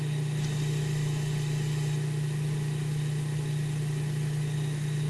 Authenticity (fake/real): real